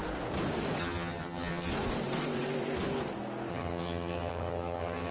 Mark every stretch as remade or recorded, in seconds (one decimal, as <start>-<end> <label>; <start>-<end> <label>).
0.0-0.8 recorded; 0.8-1.7 remade; 1.7-3.5 recorded; 3.5-5.1 remade